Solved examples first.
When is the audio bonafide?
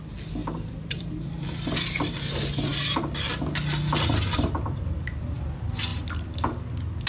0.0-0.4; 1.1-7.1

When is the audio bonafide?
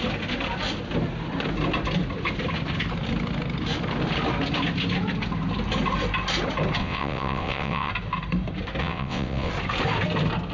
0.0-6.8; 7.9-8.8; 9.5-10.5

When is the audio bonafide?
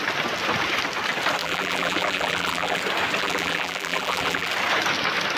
0.0-1.4; 2.8-3.2; 4.5-5.4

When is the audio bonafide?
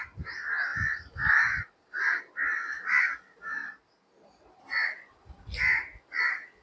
0.0-3.6; 4.6-6.6